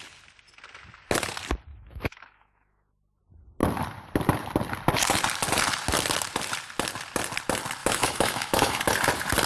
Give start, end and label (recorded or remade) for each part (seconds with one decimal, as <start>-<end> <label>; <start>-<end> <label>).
0.0-1.7 recorded; 1.7-3.2 remade; 3.2-7.8 recorded; 7.8-8.8 remade; 8.8-9.5 recorded